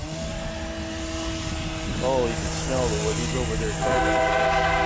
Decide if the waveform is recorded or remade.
recorded